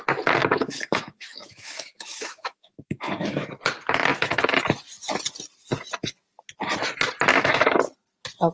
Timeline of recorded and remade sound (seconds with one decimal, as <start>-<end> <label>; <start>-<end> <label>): 0.0-0.4 recorded; 0.4-3.5 remade; 3.5-7.3 recorded; 7.3-7.8 remade; 7.8-8.5 recorded